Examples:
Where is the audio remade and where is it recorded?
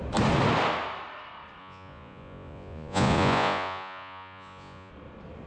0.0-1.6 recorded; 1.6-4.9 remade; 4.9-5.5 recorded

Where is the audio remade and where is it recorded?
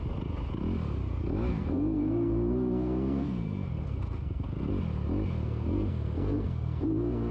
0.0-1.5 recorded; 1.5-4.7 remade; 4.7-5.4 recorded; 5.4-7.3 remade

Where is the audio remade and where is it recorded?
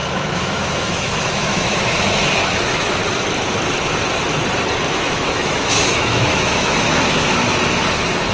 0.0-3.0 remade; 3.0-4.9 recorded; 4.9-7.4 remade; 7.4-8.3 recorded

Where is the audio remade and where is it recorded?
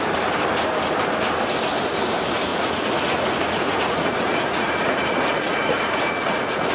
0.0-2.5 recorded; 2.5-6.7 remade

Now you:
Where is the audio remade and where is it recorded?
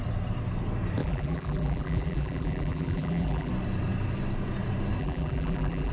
0.0-1.0 recorded; 1.0-3.5 remade; 3.5-5.0 recorded; 5.0-5.9 remade